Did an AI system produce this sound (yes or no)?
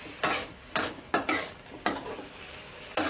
no